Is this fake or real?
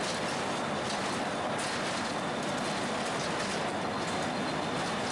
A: real